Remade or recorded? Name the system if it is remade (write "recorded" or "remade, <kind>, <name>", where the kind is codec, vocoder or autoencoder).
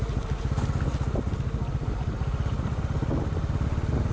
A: recorded